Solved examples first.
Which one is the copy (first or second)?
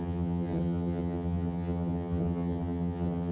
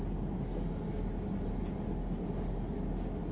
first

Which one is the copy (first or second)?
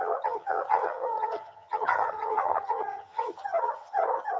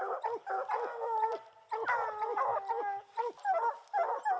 first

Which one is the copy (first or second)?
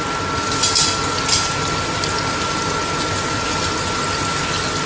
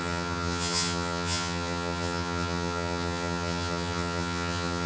second